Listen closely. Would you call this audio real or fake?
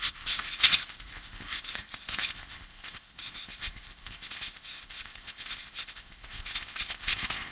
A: fake